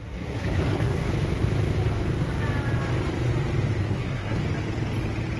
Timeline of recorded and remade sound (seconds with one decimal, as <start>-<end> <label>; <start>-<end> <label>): 0.0-1.1 remade; 1.1-3.8 recorded; 3.8-4.4 remade; 4.4-5.4 recorded